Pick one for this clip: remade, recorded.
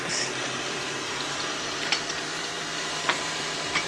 remade